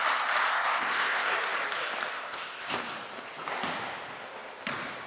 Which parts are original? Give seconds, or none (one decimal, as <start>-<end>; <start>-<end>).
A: 0.0-0.5; 1.3-2.1; 2.8-5.1